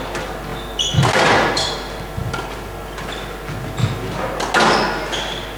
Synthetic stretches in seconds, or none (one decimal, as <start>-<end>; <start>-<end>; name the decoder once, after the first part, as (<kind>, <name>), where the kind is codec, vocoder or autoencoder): none